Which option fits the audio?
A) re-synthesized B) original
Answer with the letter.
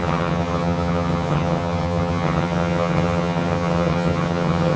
A